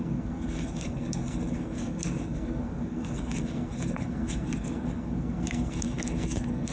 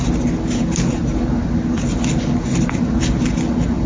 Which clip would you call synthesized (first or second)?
first